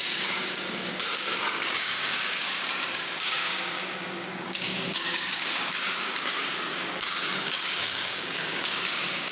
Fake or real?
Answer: fake